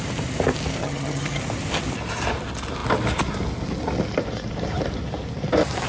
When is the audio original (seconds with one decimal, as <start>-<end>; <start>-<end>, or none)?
0.0-0.8; 1.4-5.9